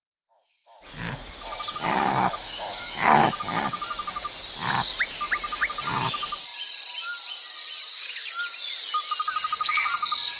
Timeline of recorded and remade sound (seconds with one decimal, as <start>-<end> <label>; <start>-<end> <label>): 0.0-2.2 recorded; 2.2-3.4 remade; 3.4-7.9 recorded; 7.9-8.4 remade; 8.4-10.4 recorded